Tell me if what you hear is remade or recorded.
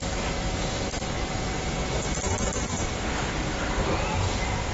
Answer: recorded